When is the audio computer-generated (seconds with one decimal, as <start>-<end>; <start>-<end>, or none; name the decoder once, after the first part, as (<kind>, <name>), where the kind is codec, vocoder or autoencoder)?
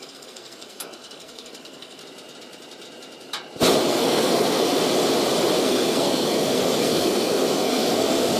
0.0-2.0 (codec, SNAC); 3.9-4.8; 5.6-8.4